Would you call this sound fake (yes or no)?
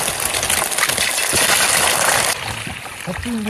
no